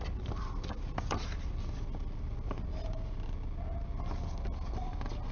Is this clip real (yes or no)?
yes